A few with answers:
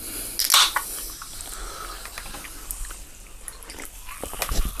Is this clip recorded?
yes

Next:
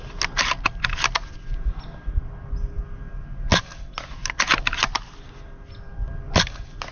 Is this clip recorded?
yes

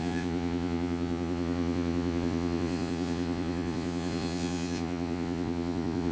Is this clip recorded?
no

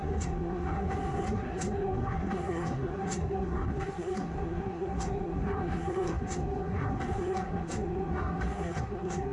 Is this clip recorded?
no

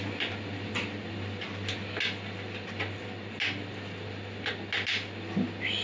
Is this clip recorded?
yes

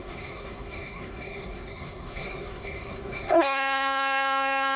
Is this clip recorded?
no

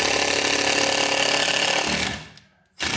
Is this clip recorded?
yes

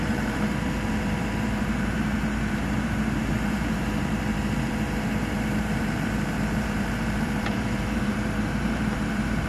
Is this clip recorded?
no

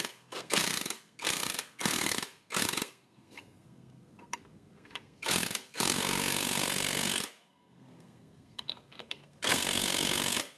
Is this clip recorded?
no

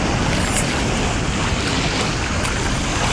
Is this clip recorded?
yes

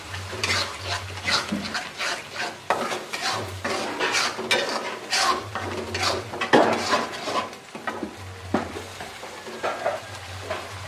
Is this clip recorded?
yes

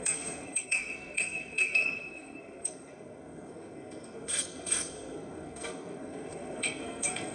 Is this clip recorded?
no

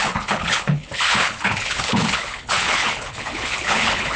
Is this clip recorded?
no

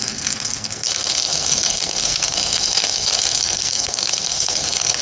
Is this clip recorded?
no